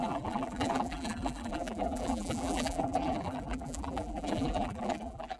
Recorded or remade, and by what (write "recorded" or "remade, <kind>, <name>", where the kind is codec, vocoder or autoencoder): remade, vocoder, BigVGAN v2